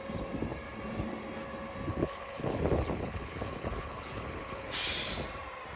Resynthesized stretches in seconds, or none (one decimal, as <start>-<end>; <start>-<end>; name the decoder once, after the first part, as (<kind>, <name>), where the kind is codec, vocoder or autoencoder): 1.9-4.7 (codec, HILCodec)